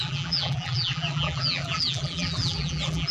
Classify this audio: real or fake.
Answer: fake